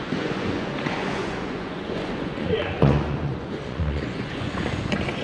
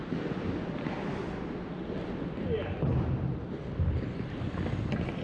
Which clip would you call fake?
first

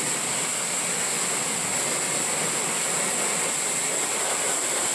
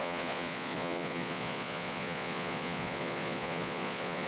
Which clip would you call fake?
second